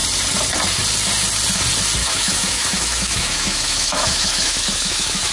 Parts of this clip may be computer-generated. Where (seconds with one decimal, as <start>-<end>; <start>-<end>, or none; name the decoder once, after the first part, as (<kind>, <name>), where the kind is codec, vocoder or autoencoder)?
2.0-5.3 (autoencoder, DAC-VAE)